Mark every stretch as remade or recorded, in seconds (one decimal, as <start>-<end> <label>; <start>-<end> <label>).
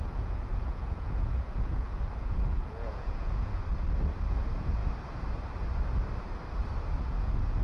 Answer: 0.0-3.6 remade; 3.6-4.3 recorded; 4.3-4.8 remade; 4.8-7.0 recorded; 7.0-7.6 remade